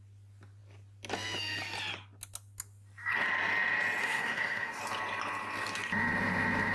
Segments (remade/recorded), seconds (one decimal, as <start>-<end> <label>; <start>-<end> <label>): 0.0-4.0 recorded; 4.0-4.8 remade; 4.8-6.7 recorded